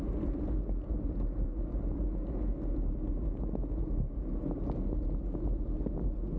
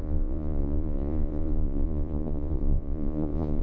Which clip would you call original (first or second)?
first